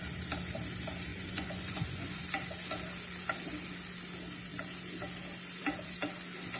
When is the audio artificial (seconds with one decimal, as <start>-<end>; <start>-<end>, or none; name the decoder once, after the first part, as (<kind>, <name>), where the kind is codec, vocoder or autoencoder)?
1.1-2.2 (vocoder, Vocos)